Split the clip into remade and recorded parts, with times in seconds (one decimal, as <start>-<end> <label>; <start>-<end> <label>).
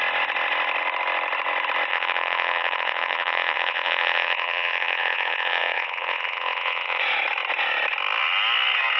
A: 0.0-1.9 recorded; 1.9-7.0 remade; 7.0-9.0 recorded